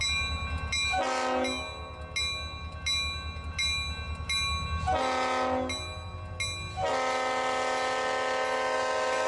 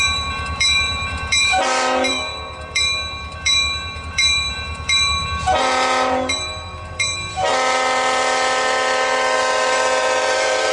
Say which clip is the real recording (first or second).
first